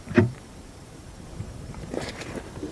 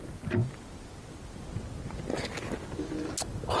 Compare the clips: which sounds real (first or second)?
second